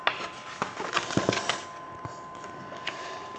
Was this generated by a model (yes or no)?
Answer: no